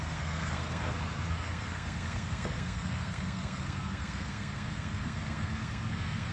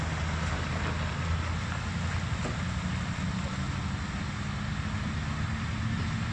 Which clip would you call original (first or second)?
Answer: second